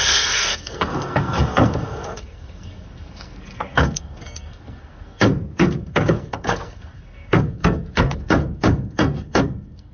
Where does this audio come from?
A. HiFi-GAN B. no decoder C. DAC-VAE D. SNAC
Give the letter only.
D